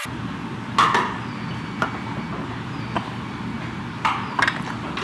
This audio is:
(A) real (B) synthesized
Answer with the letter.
A